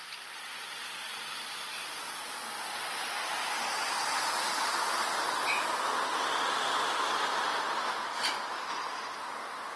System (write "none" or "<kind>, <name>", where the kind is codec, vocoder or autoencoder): none